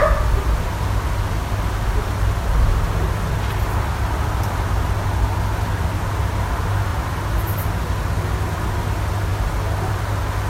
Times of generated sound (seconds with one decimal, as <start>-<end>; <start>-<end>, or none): 6.9-7.9